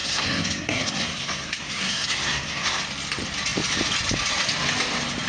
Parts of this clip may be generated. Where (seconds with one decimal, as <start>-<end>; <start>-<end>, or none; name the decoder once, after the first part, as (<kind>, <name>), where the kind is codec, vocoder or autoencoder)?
0.0-2.8 (codec, SNAC)